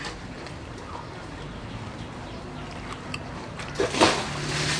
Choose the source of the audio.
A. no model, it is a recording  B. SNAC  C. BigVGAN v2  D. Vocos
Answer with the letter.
A